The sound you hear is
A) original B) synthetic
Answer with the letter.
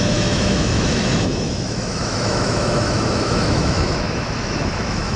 B